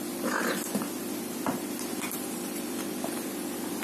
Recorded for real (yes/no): no